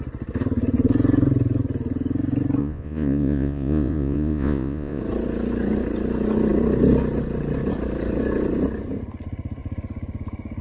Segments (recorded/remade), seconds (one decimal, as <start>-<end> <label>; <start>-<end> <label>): 0.0-2.6 recorded; 2.6-5.0 remade; 5.0-10.6 recorded

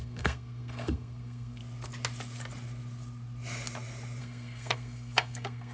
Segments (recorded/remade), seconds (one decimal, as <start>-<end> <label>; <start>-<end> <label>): 0.0-1.6 remade; 1.6-4.2 recorded; 4.2-5.7 remade

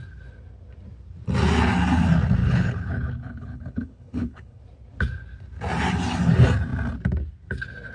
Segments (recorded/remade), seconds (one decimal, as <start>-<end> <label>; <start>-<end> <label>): 0.0-2.4 recorded; 2.4-4.6 remade; 4.6-7.9 recorded